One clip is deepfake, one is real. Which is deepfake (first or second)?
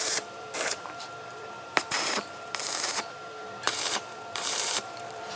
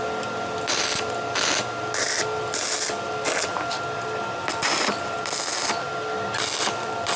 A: first